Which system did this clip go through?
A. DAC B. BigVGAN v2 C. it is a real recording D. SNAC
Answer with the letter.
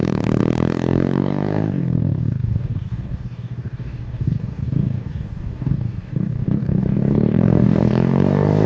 A